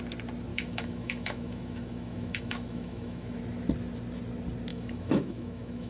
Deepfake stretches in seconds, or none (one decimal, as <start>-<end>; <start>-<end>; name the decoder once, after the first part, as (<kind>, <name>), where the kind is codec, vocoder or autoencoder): 0.5-3.4 (autoencoder, DAC-VAE); 4.7-5.9

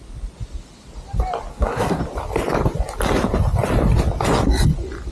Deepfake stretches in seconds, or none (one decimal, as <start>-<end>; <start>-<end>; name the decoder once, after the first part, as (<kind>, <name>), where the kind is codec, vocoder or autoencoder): 1.5-2.0 (codec, SNAC)

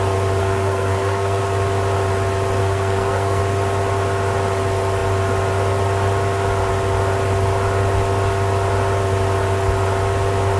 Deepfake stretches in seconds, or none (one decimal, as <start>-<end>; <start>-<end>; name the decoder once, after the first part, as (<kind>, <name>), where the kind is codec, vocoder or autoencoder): 0.4-1.4 (codec, SNAC); 2.6-3.4

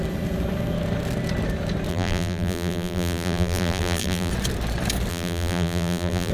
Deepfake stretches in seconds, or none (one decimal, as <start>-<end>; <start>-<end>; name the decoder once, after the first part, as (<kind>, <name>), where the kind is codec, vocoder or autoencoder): 1.9-4.3 (vocoder, BigVGAN v2); 5.1-6.3

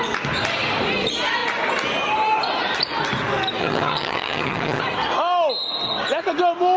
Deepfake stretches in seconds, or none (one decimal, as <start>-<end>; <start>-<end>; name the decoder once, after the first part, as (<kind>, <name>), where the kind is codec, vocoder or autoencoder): 3.6-4.8 (vocoder, HiFi-GAN)

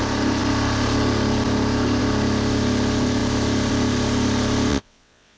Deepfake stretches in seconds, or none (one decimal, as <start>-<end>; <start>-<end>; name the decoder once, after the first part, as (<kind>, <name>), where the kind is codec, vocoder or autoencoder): 4.7-5.4 (vocoder, WaveNeXt)

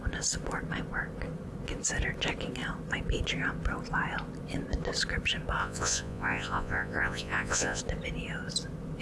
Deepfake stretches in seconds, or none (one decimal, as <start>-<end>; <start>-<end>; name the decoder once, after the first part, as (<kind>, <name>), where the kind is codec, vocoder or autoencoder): 5.6-7.8 (vocoder, Vocos)

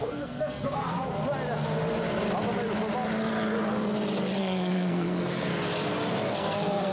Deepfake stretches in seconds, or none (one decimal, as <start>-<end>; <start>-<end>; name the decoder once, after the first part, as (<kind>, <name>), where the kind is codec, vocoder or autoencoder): 0.0-1.1 (codec, SNAC); 4.4-5.5; 6.3-6.9